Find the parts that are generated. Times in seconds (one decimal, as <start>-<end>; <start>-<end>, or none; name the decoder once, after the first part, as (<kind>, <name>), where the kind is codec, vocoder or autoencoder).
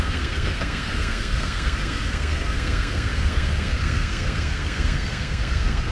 0.0-5.9 (codec, SNAC)